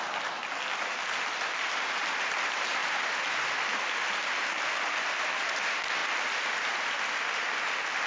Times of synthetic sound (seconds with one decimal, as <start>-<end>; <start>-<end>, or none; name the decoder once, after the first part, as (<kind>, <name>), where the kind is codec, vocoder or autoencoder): none

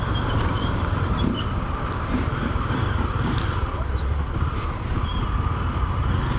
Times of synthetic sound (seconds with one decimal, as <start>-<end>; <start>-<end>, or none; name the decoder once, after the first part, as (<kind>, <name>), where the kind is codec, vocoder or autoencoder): 0.0-5.1 (vocoder, BigVGAN v2)

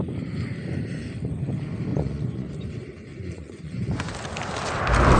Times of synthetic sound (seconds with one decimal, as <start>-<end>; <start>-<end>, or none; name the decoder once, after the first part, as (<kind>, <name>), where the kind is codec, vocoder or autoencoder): 1.9-2.5 (vocoder, Vocos); 3.1-4.1

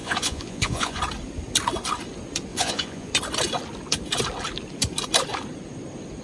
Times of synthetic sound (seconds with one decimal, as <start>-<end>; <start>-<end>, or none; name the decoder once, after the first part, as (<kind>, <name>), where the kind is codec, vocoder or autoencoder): 0.0-1.0 (vocoder, Vocos); 2.5-3.1

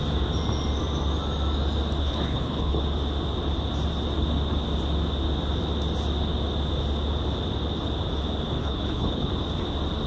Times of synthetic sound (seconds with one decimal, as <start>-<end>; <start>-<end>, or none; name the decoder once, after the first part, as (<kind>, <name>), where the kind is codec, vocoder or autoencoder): 2.0-2.8 (codec, HILCodec); 8.6-9.3

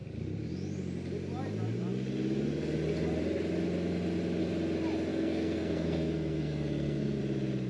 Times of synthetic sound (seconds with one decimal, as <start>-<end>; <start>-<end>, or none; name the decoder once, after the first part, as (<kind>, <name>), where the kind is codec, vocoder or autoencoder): 5.1-7.2 (codec, SNAC)

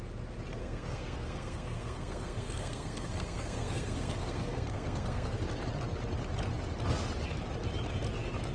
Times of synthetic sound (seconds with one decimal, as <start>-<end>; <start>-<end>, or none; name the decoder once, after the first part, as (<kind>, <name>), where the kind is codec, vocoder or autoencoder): 0.6-5.4 (codec, SNAC)